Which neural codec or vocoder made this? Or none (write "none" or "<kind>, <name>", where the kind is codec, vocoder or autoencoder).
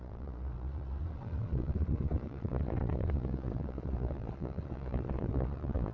vocoder, Vocos